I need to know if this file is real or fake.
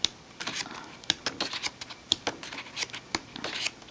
real